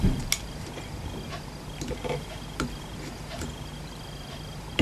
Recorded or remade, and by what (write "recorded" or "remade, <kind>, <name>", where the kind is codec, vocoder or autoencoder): recorded